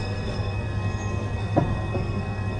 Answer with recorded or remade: remade